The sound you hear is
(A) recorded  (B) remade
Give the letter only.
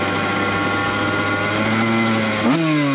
A